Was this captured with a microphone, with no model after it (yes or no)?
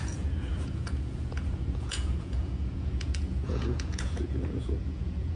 no